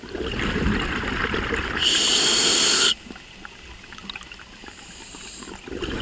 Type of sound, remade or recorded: recorded